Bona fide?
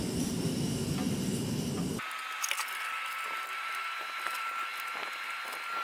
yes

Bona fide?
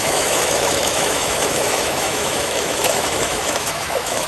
no